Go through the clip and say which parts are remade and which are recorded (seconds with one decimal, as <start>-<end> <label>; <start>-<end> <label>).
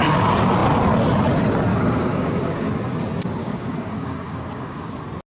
0.0-1.7 recorded; 1.7-2.7 remade; 2.7-3.4 recorded; 3.4-4.9 remade; 4.9-5.4 recorded